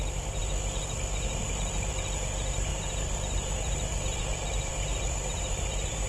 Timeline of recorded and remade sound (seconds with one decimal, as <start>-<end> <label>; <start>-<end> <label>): 0.0-2.7 recorded; 2.7-6.1 remade